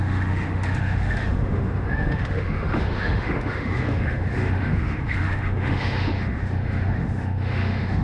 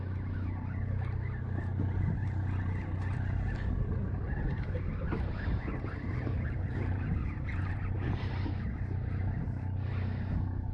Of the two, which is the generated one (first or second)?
first